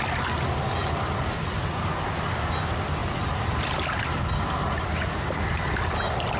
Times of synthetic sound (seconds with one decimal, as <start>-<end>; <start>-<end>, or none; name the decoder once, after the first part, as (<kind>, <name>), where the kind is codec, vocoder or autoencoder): none